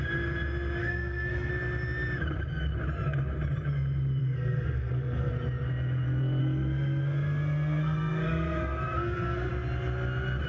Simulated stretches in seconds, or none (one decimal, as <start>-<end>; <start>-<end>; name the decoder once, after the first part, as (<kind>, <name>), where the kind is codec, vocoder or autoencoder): 0.8-1.5 (codec, SNAC); 4.2-5.3; 6.4-9.5